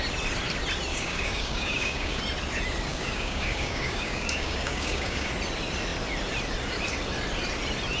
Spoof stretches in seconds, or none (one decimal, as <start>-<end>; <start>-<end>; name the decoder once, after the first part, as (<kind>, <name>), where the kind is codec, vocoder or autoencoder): 0.9-2.2 (codec, DAC); 2.9-5.3